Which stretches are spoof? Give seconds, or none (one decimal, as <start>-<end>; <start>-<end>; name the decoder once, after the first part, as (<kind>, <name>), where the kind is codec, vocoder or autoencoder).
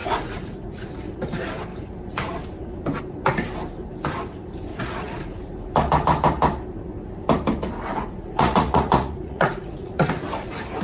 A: 0.0-0.9 (vocoder, Vocos); 4.7-5.2; 7.9-10.1